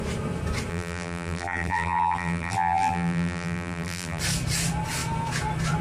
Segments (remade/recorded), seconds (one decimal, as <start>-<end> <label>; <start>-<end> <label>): 0.0-0.7 recorded; 0.7-4.2 remade; 4.2-5.8 recorded